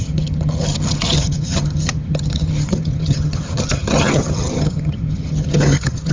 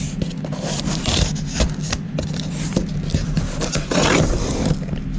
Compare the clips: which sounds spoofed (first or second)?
first